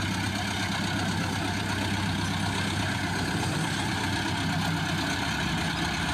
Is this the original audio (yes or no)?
yes